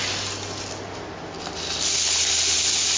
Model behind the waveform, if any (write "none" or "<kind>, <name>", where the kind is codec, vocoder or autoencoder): none